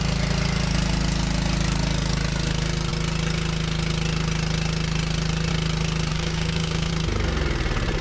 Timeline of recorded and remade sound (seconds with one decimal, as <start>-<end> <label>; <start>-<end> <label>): 0.0-6.1 recorded; 6.1-6.9 remade; 6.9-8.0 recorded